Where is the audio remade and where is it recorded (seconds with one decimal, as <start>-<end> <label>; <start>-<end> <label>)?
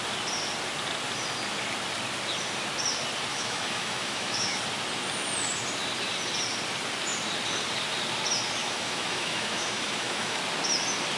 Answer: 0.0-3.3 recorded; 3.3-4.6 remade; 4.6-8.6 recorded; 8.6-10.4 remade; 10.4-11.2 recorded